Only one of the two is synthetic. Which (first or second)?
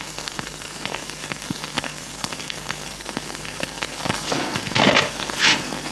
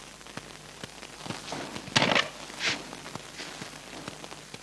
first